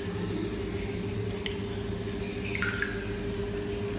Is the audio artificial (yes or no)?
no